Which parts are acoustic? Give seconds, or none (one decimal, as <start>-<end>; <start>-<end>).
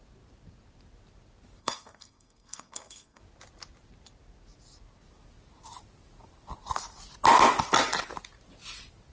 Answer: 0.0-1.6; 3.2-9.1